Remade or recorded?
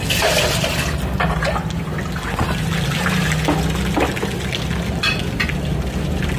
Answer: recorded